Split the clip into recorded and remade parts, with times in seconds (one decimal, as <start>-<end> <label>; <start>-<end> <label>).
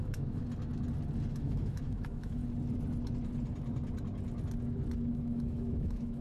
0.0-0.4 remade; 0.4-1.3 recorded; 1.3-2.4 remade; 2.4-5.1 recorded; 5.1-6.2 remade